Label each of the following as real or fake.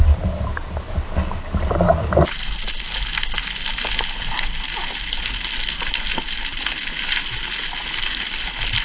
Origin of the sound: real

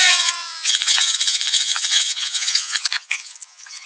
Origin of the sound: fake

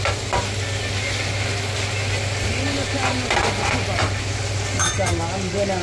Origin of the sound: real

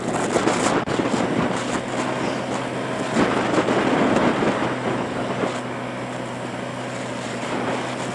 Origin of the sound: real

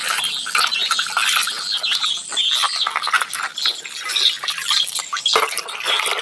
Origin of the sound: real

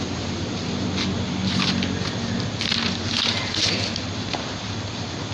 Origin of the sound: real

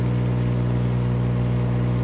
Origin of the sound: real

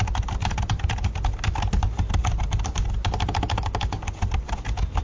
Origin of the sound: real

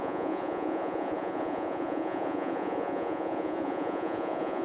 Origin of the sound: fake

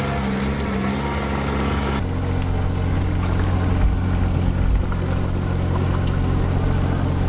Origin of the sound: real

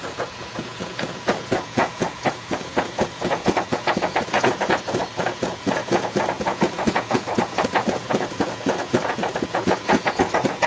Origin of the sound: fake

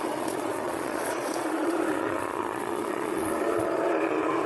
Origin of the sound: fake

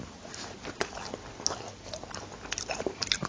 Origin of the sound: real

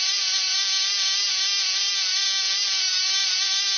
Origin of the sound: real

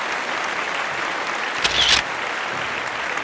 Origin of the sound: real